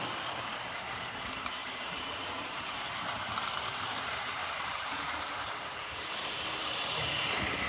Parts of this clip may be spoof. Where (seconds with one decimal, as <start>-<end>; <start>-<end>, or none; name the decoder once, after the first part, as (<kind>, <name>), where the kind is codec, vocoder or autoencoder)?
1.6-2.9 (vocoder, BigVGAN v2); 4.4-7.7